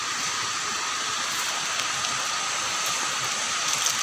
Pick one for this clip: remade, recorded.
recorded